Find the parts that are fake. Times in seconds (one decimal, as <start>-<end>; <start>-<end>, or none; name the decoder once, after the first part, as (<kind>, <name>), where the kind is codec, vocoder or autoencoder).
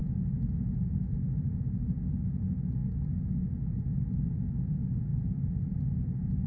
0.0-2.8 (vocoder, Vocos); 3.8-6.5